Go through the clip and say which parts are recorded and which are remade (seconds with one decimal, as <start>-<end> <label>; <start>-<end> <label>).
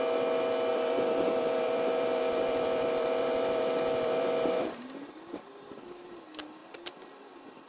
0.0-0.7 recorded; 0.7-4.8 remade; 4.8-7.7 recorded